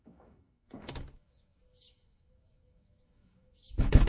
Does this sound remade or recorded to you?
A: remade